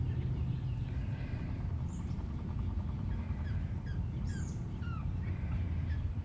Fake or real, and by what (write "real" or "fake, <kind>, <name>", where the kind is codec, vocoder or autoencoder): fake, vocoder, BigVGAN v2